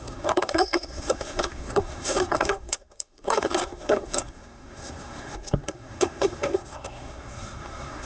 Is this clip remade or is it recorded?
remade